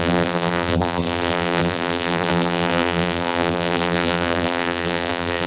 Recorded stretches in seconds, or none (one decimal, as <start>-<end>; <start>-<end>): none